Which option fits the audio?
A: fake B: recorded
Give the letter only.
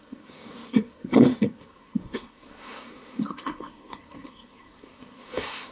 A